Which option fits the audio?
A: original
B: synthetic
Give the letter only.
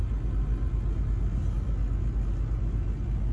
A